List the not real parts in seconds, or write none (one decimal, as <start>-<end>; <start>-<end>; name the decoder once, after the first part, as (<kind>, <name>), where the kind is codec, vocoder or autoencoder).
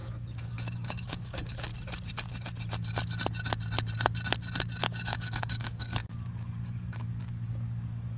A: 0.0-1.7 (codec, DAC); 4.8-8.2